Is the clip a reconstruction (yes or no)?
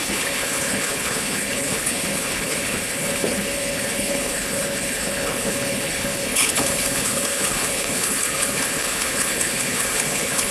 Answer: yes